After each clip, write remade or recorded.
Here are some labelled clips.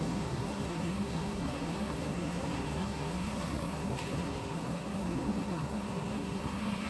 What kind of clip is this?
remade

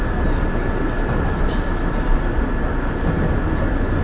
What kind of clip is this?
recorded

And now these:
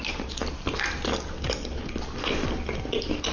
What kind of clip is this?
recorded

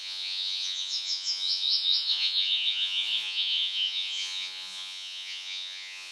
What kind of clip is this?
remade